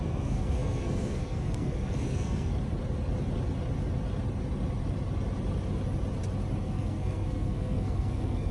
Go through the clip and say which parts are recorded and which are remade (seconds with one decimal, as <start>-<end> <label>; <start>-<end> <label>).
0.0-2.5 remade; 2.5-6.6 recorded; 6.6-8.5 remade